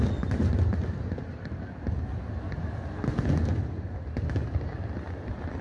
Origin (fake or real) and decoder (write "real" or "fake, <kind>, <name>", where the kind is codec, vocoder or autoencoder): real